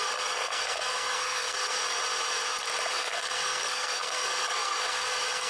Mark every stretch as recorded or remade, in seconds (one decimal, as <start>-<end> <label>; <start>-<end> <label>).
0.0-1.8 remade; 1.8-2.9 recorded; 2.9-5.5 remade

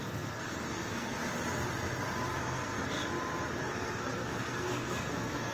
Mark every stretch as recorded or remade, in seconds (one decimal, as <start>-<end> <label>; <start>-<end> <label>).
0.0-1.2 remade; 1.2-2.4 recorded; 2.4-3.0 remade; 3.0-3.6 recorded; 3.6-5.5 remade